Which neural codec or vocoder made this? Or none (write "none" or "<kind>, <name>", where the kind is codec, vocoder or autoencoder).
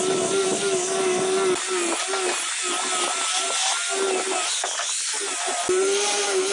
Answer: none